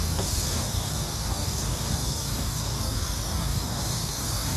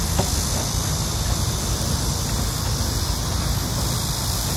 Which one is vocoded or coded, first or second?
first